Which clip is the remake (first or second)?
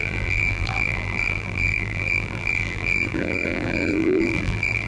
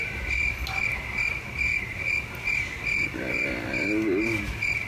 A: first